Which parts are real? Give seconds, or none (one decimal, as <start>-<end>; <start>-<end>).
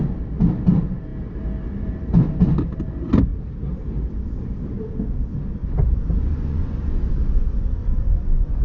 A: 0.0-5.6; 7.1-7.8